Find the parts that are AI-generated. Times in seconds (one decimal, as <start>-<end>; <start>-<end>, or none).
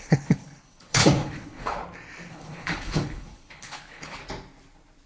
0.0-1.8; 2.3-4.2